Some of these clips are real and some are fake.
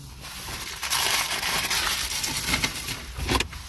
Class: real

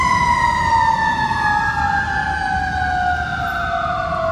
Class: real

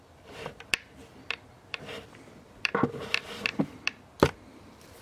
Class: fake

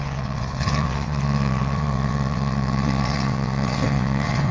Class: fake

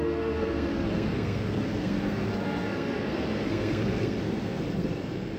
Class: fake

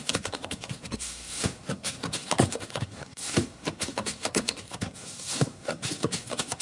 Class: fake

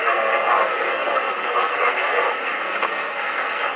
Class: fake